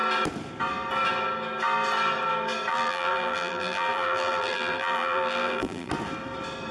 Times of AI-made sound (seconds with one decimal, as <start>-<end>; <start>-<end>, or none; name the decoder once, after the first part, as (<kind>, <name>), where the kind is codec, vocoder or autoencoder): 2.7-5.9 (vocoder, BigVGAN v2)